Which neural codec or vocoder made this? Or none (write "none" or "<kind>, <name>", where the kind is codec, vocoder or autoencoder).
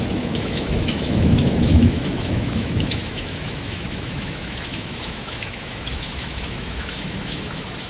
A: autoencoder, DAC-VAE